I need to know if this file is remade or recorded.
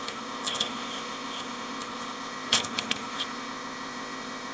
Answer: remade